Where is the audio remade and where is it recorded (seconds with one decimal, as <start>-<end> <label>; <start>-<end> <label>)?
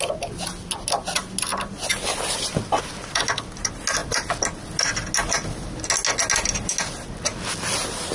0.0-8.1 recorded